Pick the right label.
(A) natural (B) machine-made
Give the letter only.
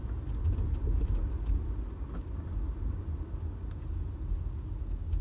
A